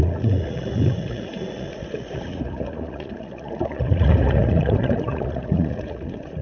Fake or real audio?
fake